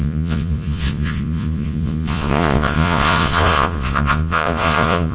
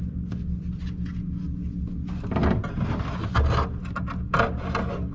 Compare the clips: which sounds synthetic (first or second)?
first